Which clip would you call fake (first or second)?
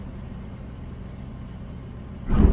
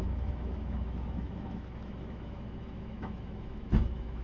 second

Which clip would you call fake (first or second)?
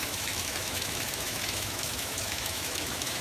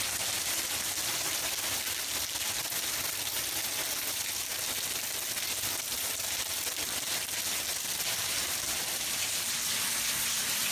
first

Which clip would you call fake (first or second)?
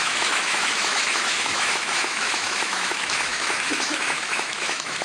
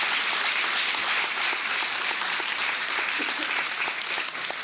first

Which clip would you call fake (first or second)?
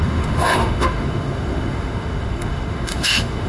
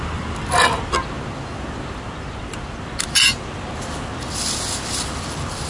first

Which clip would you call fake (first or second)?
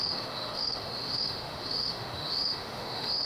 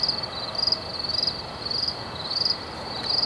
first